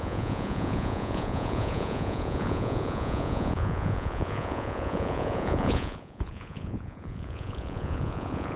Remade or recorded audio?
remade